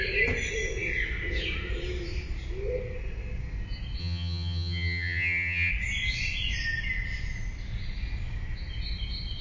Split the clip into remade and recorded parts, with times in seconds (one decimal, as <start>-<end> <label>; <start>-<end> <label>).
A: 0.0-4.0 recorded; 4.0-5.7 remade; 5.7-9.4 recorded